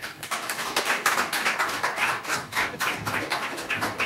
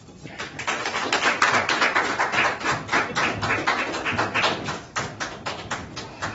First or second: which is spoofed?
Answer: first